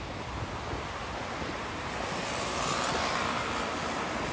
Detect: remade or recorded recorded